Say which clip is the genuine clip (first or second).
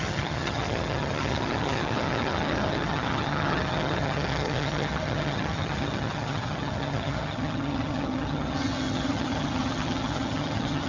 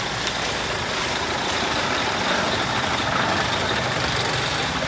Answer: second